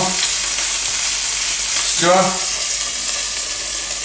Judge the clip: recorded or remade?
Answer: recorded